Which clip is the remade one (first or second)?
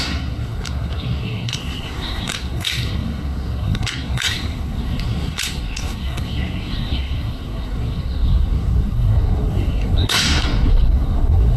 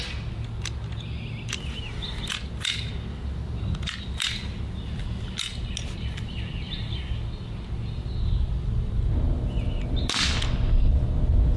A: first